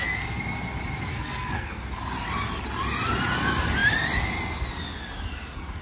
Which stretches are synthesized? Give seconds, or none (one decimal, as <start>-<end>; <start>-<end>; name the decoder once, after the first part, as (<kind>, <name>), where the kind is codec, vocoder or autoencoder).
1.1-1.8 (codec, SNAC)